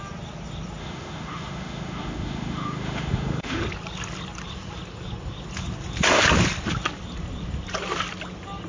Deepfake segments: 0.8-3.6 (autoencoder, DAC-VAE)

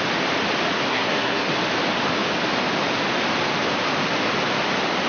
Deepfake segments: 0.9-1.5 (codec, SNAC)